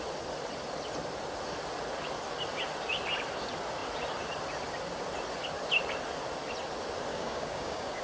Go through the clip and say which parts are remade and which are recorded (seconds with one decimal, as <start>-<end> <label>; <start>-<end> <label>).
0.0-7.1 recorded; 7.1-8.0 remade